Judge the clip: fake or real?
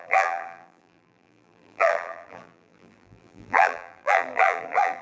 fake